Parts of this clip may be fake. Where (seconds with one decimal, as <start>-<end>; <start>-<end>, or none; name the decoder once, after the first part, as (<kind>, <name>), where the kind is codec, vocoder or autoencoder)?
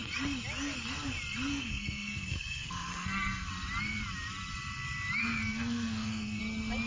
1.5-3.5 (codec, SNAC); 5.2-6.4